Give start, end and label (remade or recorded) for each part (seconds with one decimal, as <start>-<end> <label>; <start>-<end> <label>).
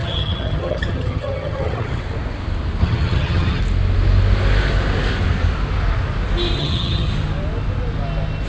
0.0-2.0 remade; 2.0-2.8 recorded; 2.8-3.6 remade; 3.6-6.6 recorded; 6.6-7.1 remade; 7.1-8.5 recorded